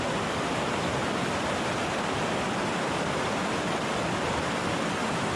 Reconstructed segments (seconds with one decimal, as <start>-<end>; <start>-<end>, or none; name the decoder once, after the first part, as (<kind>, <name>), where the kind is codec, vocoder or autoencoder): 1.0-2.0 (vocoder, BigVGAN v2); 3.9-4.6